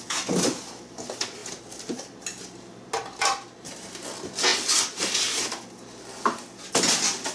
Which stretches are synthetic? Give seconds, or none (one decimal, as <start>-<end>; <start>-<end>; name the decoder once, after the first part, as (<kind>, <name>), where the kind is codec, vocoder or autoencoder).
none